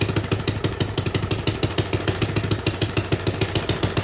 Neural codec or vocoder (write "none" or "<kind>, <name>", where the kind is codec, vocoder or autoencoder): none